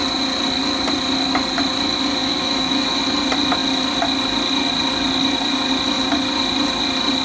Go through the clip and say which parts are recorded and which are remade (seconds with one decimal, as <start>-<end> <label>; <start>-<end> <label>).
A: 0.0-2.2 recorded; 2.2-3.0 remade; 3.0-7.2 recorded